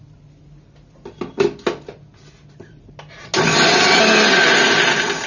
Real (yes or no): yes